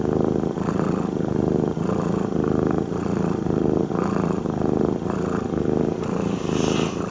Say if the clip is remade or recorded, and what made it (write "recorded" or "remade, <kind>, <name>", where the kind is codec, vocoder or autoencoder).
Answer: recorded